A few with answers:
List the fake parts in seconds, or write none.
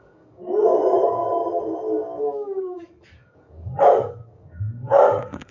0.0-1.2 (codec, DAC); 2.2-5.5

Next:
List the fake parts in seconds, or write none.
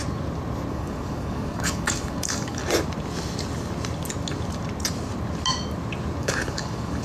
0.7-2.6 (codec, DAC); 6.2-7.0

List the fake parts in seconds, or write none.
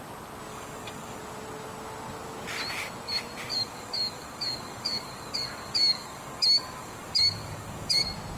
0.5-1.2 (codec, DAC); 3.5-8.0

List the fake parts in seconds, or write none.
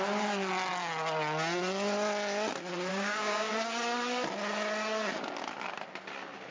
2.9-3.5 (codec, DAC)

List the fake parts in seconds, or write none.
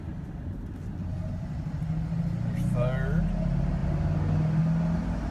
none